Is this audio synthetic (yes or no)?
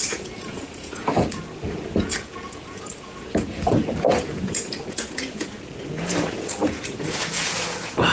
yes